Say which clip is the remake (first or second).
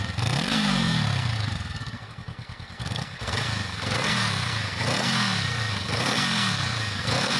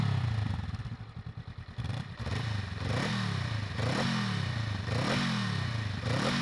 first